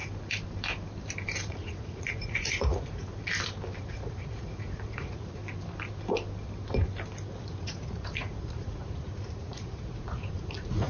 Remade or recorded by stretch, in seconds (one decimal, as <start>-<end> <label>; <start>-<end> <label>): 0.0-1.5 recorded; 1.5-3.1 remade; 3.1-3.9 recorded; 3.9-5.4 remade; 5.4-7.4 recorded; 7.4-10.9 remade